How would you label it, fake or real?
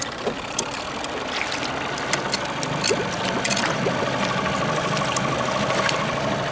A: real